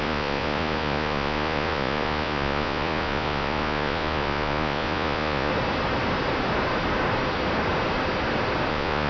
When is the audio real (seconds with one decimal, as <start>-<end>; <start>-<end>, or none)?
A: 5.5-8.7